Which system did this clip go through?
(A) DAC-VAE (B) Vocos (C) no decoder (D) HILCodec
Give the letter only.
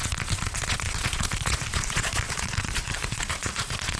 B